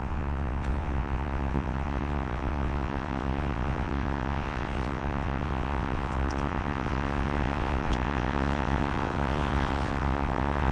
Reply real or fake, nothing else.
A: fake